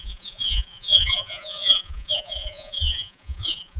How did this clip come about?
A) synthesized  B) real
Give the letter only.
A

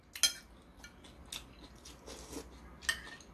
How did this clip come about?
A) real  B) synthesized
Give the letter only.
A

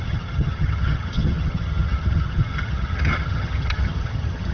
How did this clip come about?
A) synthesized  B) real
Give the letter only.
A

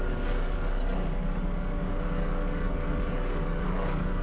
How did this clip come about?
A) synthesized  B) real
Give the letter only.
A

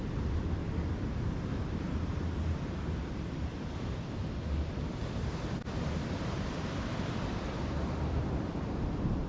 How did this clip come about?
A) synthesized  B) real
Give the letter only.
A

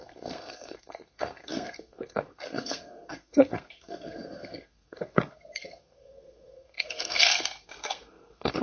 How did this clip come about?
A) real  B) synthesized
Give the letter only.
B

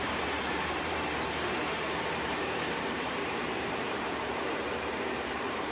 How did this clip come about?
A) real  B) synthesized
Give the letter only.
B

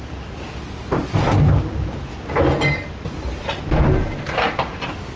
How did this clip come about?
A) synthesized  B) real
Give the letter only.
B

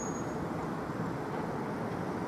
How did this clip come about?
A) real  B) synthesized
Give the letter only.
A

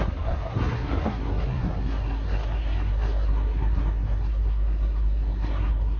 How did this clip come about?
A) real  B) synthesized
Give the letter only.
B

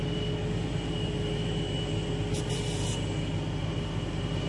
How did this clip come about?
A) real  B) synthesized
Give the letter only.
A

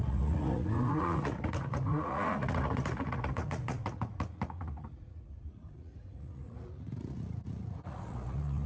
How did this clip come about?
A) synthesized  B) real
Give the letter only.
A